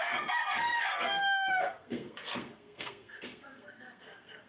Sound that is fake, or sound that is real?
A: fake